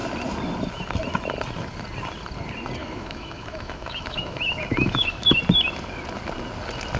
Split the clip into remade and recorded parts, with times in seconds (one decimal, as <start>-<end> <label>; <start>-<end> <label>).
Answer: 0.0-2.8 recorded; 2.8-5.4 remade; 5.4-7.0 recorded